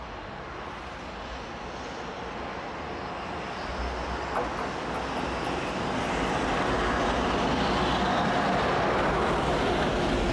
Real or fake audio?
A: real